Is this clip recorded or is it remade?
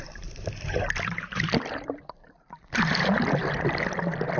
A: remade